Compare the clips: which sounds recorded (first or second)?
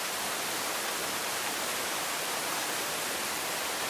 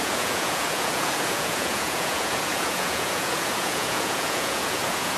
first